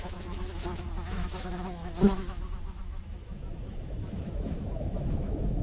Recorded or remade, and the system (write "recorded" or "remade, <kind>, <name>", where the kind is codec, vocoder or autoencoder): remade, autoencoder, DAC-VAE